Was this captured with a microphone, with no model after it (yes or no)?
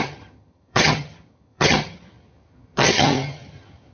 no